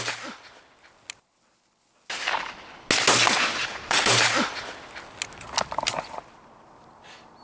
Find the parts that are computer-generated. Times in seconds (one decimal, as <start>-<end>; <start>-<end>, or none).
3.6-4.3